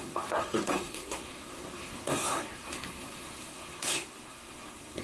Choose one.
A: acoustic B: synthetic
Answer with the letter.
B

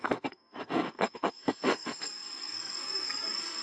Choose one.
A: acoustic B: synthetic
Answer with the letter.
B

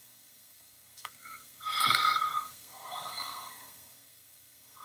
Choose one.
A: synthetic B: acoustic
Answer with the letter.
A